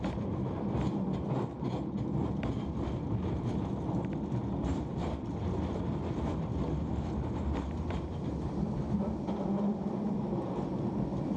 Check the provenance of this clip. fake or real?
fake